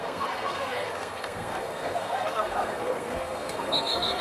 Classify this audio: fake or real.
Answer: fake